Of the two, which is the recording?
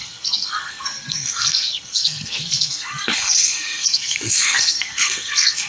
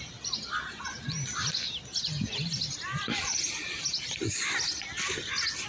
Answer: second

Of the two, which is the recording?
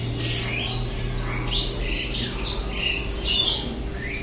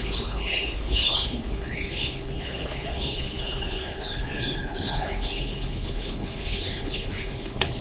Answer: first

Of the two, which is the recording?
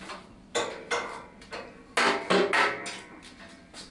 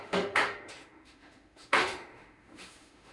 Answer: first